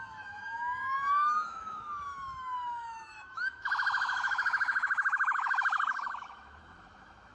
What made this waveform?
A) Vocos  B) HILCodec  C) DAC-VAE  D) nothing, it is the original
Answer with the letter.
C